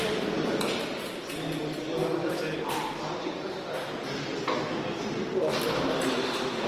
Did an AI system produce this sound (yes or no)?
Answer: no